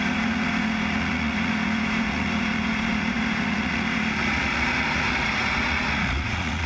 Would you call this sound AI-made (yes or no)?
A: yes